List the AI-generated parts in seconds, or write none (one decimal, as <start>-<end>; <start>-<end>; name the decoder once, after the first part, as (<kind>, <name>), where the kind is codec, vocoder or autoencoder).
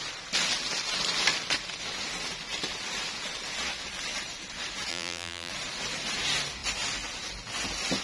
4.9-5.5 (vocoder, BigVGAN v2)